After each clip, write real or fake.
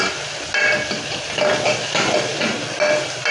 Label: real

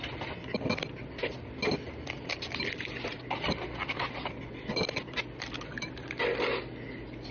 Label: real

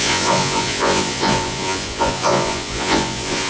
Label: fake